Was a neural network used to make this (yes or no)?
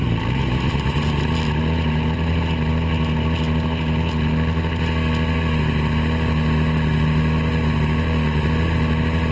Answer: no